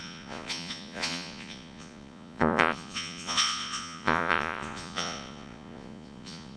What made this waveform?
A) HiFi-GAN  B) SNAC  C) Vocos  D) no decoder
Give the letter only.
C